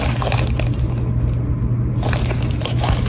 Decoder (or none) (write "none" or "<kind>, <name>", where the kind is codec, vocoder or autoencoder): none